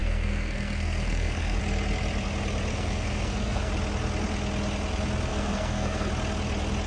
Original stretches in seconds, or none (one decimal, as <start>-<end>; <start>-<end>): 1.6-2.7; 3.7-5.3; 6.1-6.9